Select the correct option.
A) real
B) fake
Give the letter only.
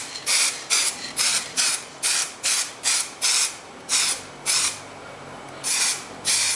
B